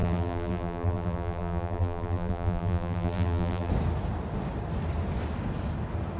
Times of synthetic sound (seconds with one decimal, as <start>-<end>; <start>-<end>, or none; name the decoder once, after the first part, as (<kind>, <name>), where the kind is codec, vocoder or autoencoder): 0.0-3.7 (vocoder, BigVGAN v2)